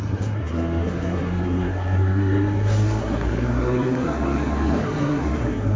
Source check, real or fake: fake